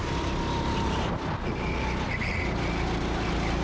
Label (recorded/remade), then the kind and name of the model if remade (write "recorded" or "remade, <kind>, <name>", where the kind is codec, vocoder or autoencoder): recorded